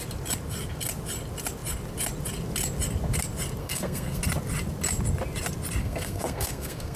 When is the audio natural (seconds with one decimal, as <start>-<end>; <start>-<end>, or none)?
0.0-3.6; 4.2-5.8